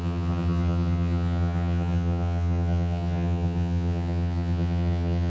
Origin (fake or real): fake